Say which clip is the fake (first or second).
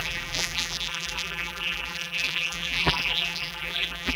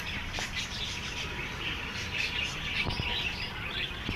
first